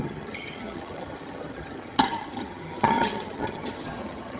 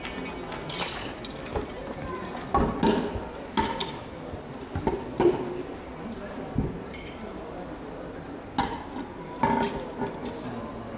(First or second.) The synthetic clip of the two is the first